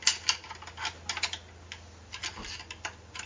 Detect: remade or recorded recorded